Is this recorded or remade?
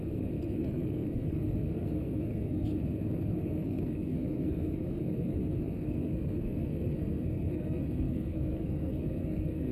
remade